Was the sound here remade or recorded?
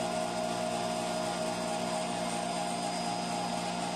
recorded